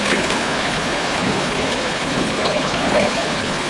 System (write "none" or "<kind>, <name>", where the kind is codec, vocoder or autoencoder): codec, HILCodec